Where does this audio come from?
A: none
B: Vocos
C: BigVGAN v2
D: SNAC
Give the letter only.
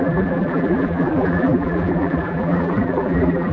C